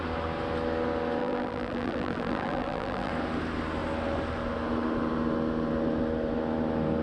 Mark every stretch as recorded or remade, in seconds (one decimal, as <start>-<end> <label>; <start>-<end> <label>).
0.0-1.2 recorded; 1.2-3.1 remade; 3.1-7.0 recorded